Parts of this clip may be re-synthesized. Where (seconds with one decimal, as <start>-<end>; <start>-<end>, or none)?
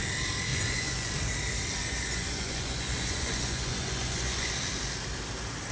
0.5-1.1; 1.8-4.5